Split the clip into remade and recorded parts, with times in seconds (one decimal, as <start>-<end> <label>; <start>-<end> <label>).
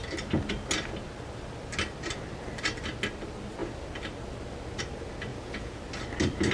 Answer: 0.0-5.3 recorded; 5.3-5.8 remade; 5.8-6.5 recorded